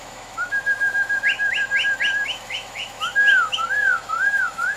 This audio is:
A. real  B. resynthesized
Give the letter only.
B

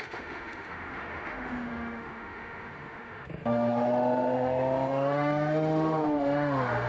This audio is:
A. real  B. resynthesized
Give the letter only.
B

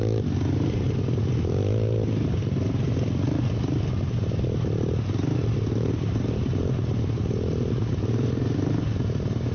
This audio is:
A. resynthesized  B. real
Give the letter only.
B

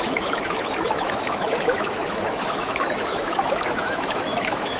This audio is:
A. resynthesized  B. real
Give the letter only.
A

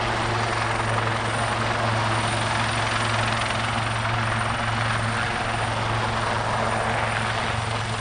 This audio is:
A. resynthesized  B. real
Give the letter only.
B